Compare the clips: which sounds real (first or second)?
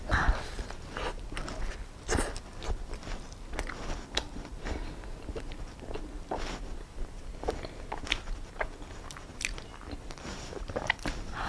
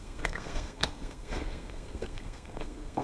first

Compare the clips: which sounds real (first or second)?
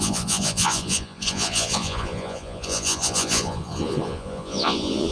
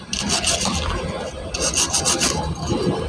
second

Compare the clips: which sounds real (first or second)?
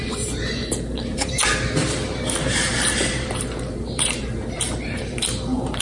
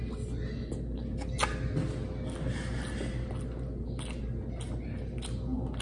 second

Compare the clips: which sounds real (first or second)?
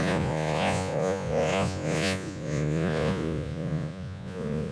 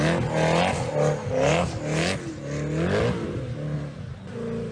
second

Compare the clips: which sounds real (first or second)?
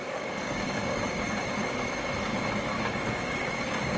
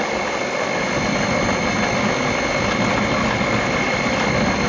second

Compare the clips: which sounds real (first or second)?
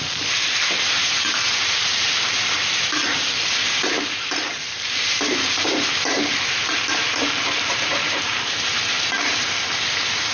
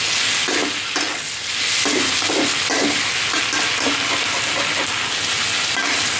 second